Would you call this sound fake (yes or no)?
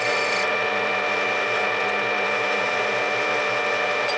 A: no